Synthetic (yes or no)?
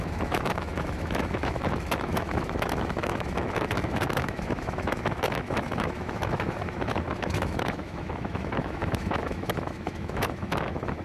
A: yes